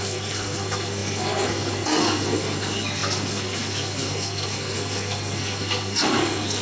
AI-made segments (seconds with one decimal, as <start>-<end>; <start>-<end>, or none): 0.0-6.6